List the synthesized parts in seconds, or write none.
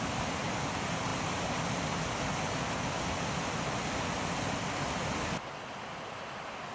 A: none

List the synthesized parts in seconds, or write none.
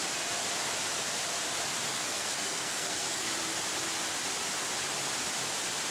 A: 1.9-3.3 (codec, SNAC)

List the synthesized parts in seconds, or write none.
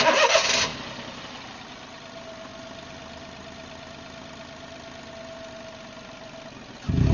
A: none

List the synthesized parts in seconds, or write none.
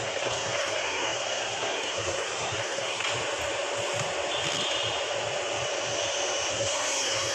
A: 0.0-3.0 (codec, SNAC); 6.5-7.3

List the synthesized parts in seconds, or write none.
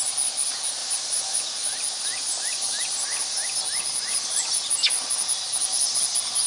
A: none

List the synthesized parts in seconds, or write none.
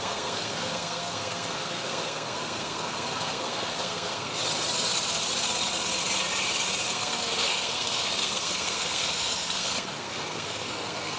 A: 0.0-4.4 (codec, SNAC); 6.9-11.2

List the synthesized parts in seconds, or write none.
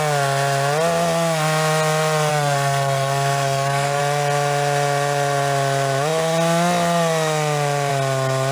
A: 2.3-4.0 (codec, SNAC)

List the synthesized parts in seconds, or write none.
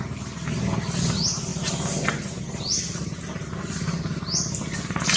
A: none